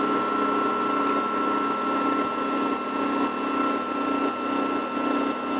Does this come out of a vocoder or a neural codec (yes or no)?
no